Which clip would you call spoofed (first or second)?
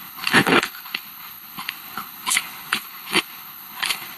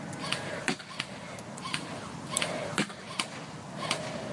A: first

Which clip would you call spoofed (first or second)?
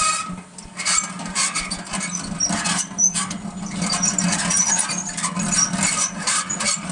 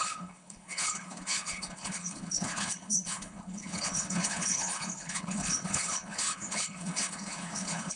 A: second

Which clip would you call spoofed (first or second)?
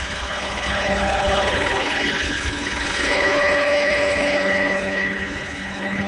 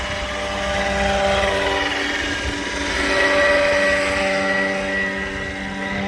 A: first